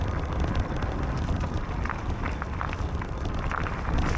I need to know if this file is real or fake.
real